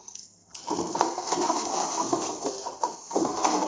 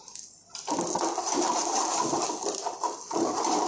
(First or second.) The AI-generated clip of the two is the first